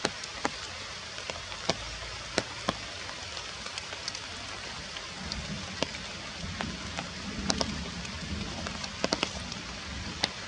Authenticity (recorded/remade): recorded